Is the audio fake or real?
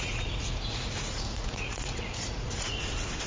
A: fake